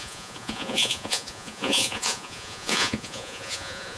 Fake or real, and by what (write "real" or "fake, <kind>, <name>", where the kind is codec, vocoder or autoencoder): fake, vocoder, Vocos